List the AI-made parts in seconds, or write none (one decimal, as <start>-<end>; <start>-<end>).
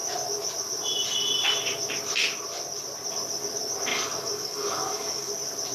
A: 3.9-5.3